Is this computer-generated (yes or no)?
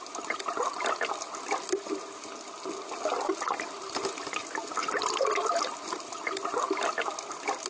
no